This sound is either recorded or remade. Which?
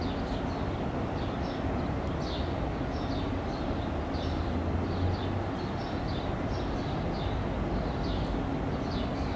recorded